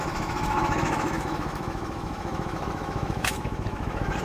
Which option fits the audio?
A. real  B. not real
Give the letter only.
B